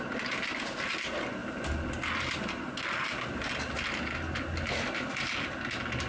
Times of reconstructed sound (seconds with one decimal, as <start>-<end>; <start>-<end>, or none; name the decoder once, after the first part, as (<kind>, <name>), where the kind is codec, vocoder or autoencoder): none